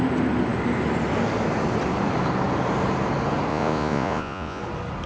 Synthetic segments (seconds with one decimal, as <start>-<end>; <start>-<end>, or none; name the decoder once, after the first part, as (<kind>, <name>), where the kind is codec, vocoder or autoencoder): 3.5-4.6 (vocoder, Vocos)